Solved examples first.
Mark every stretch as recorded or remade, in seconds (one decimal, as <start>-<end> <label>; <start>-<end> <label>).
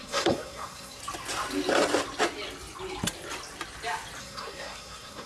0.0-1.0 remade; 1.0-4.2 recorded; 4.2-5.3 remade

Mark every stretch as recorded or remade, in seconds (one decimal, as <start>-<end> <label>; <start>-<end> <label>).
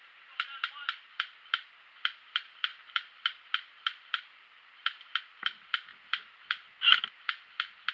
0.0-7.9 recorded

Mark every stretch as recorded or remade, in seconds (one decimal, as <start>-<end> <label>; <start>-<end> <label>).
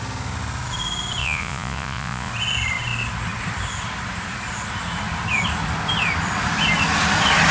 0.0-1.2 recorded; 1.2-2.3 remade; 2.3-7.5 recorded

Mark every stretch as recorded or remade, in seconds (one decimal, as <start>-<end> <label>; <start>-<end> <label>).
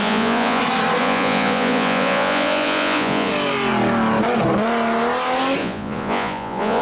0.0-0.6 remade; 0.6-1.0 recorded; 1.0-3.3 remade; 3.3-5.6 recorded; 5.6-6.8 remade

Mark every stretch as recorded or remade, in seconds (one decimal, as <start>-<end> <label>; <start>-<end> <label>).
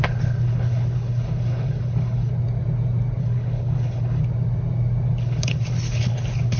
0.0-2.3 remade; 2.3-3.2 recorded; 3.2-4.2 remade; 4.2-5.2 recorded; 5.2-6.6 remade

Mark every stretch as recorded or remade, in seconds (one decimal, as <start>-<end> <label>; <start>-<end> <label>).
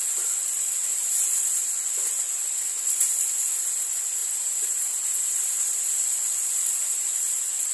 0.0-0.9 recorded; 0.9-1.4 remade; 1.4-4.2 recorded; 4.2-4.9 remade; 4.9-7.7 recorded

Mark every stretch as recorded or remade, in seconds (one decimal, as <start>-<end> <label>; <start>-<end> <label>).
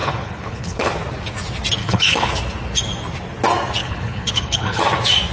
0.0-0.9 remade; 0.9-1.8 recorded; 1.8-2.3 remade; 2.3-3.8 recorded; 3.8-4.8 remade; 4.8-5.3 recorded